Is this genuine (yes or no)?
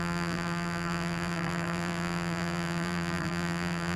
no